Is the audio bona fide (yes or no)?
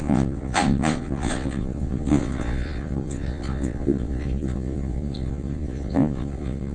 no